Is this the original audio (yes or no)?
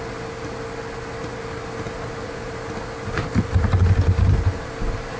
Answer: yes